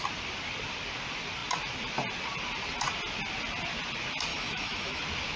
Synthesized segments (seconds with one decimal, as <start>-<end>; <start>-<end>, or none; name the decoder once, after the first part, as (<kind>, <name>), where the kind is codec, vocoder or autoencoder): 4.3-5.0 (autoencoder, DAC-VAE)